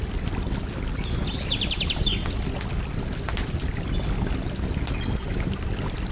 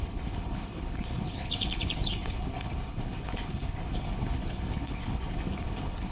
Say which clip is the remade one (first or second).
second